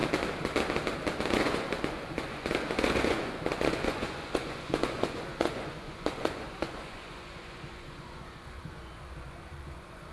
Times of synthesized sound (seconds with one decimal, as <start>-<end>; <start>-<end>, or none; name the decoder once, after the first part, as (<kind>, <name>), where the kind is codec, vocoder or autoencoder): 1.3-10.1 (vocoder, Vocos)